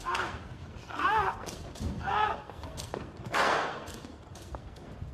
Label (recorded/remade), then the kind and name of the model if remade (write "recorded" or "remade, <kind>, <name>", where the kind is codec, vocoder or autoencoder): remade, codec, SNAC